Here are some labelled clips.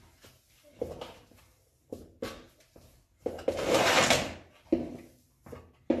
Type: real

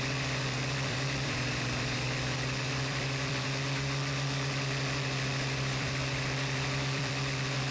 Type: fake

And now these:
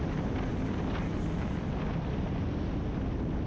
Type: real